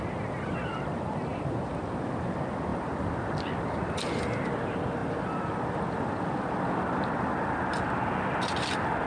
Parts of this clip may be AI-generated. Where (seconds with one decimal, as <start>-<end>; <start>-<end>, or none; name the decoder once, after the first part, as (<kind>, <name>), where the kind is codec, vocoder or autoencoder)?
1.3-1.9 (vocoder, BigVGAN v2); 5.0-7.6